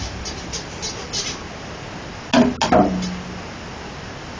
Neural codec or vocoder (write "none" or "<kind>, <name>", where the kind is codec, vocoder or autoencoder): none